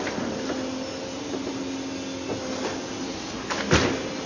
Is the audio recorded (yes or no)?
yes